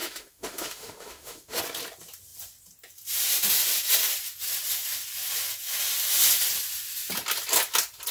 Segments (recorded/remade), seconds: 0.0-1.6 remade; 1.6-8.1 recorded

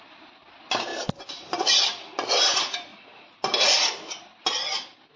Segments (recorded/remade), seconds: 0.0-5.2 recorded